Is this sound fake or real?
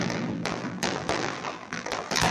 fake